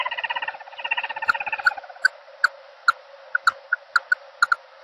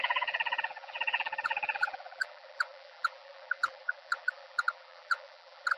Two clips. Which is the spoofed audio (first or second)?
second